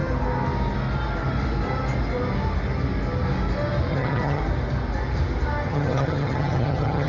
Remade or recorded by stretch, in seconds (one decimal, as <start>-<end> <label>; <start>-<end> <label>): 0.0-3.9 recorded; 3.9-4.4 remade; 4.4-5.7 recorded; 5.7-7.1 remade

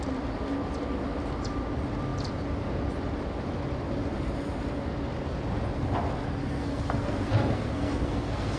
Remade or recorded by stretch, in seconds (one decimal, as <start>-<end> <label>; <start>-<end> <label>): 0.0-6.4 recorded; 6.4-8.6 remade

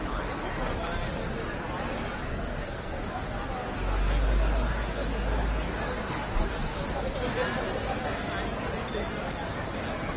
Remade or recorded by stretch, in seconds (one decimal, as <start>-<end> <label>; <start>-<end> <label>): 0.0-2.3 recorded; 2.3-3.0 remade; 3.0-10.2 recorded

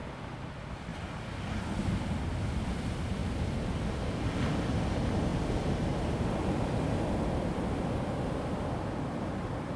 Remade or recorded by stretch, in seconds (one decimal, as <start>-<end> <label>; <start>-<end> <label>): 0.0-9.8 recorded